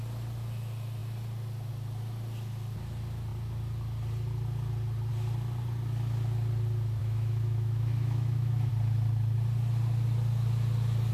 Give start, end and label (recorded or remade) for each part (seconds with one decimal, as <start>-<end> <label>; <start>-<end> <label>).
0.0-7.0 recorded; 7.0-8.7 remade; 8.7-11.1 recorded